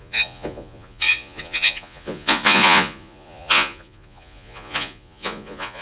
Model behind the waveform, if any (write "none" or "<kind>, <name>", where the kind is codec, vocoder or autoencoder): vocoder, Vocos